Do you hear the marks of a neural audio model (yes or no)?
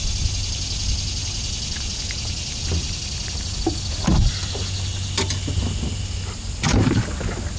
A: no